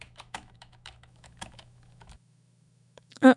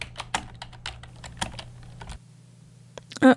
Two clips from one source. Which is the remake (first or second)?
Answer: first